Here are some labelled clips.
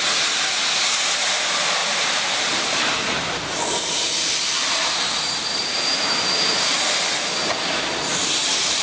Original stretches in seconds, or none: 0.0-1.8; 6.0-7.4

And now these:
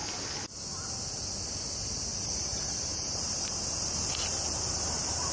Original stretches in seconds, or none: 0.0-2.1

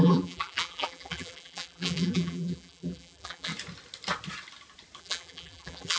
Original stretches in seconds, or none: 3.5-5.0